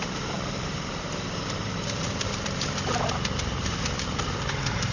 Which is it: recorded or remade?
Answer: remade